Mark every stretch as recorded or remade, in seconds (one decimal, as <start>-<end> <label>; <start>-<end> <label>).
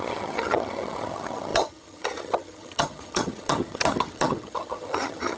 0.0-5.4 remade